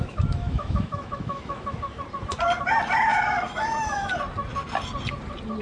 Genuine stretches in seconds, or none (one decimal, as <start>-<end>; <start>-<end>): 2.0-3.1; 4.1-5.6